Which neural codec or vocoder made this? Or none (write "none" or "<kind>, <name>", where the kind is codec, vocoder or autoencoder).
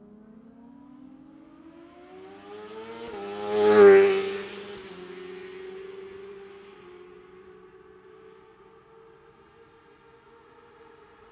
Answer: none